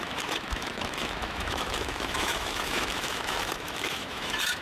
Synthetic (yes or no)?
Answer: yes